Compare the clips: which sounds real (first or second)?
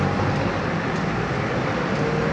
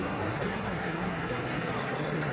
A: first